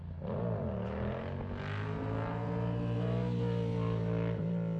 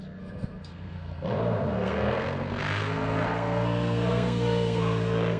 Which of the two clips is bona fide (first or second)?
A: first